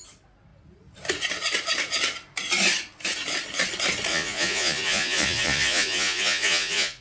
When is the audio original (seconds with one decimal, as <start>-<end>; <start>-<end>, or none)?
0.0-4.1

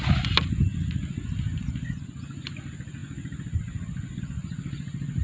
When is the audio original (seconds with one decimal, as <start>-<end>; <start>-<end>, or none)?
0.0-5.2

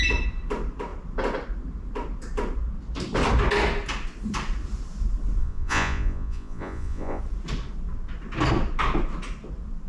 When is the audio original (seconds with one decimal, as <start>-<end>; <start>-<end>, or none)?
0.0-5.4; 7.2-9.9

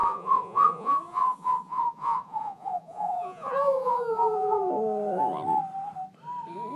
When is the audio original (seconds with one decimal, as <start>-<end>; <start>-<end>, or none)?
4.6-6.8

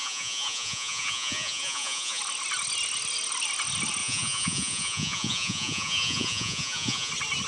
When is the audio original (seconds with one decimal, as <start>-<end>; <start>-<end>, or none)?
2.2-4.0; 7.1-7.5

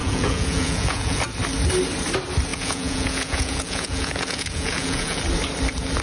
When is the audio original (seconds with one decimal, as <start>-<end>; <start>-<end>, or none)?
1.2-2.5; 5.2-6.0

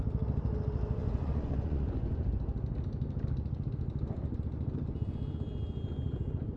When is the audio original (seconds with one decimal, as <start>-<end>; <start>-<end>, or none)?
0.0-1.0; 2.4-6.6